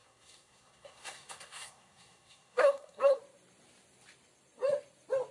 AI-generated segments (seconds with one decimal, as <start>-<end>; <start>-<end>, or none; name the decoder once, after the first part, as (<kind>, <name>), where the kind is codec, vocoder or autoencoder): 0.0-3.2 (codec, SNAC)